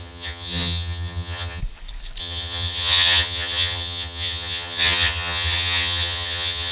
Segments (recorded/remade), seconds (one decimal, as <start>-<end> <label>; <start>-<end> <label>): 0.0-1.6 remade; 1.6-2.2 recorded; 2.2-6.7 remade